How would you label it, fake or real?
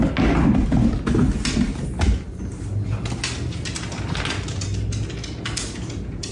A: real